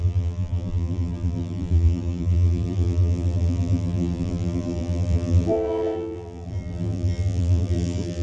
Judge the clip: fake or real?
fake